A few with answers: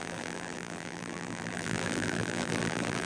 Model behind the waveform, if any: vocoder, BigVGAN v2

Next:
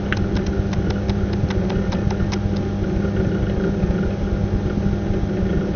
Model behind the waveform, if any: none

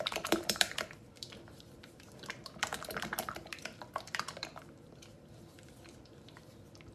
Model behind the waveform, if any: vocoder, BigVGAN v2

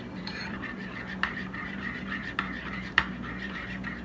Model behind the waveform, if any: vocoder, BigVGAN v2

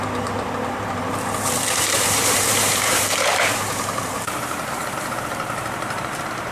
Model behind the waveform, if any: vocoder, BigVGAN v2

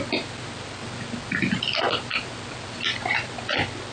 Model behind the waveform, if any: none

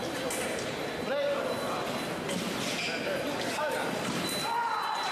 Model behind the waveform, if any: none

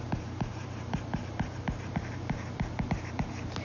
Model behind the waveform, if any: vocoder, BigVGAN v2